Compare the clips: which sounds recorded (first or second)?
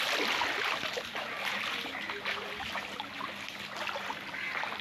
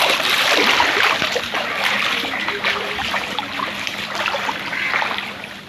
first